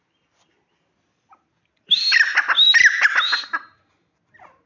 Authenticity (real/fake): real